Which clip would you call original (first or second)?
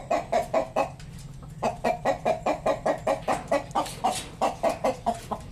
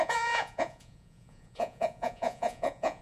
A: first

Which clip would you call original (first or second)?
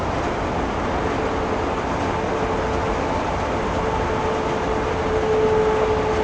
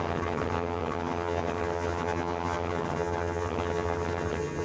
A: first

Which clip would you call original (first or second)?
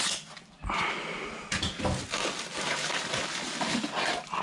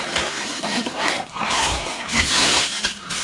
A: first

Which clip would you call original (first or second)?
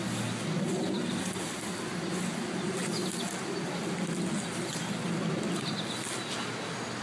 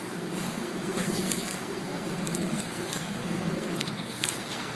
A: first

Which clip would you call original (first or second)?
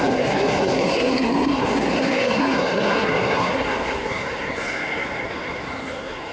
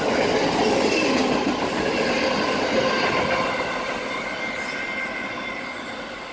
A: second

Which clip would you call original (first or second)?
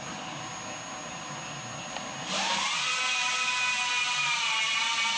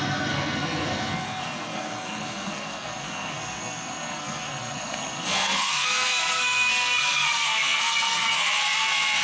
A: first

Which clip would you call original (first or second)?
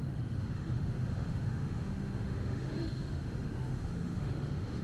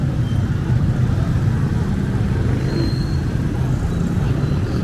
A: second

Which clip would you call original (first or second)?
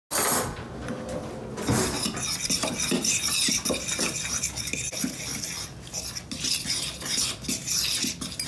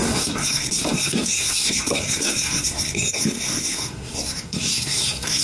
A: first